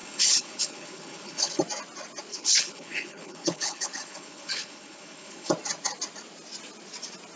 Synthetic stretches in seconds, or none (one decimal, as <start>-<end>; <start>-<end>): 0.0-1.6; 2.3-5.5